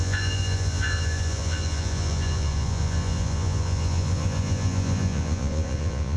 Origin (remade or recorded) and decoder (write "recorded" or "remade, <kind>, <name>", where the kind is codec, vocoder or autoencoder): remade, vocoder, Vocos